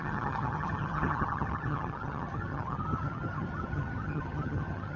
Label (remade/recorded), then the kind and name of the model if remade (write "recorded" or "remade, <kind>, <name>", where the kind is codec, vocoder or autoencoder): remade, vocoder, HiFi-GAN